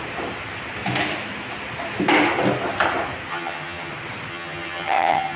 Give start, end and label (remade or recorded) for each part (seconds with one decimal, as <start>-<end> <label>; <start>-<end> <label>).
0.0-3.3 recorded; 3.3-3.9 remade; 3.9-4.3 recorded; 4.3-5.4 remade